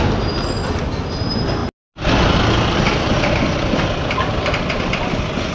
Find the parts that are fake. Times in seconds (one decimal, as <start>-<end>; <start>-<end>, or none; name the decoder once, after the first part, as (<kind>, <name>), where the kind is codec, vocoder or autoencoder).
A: none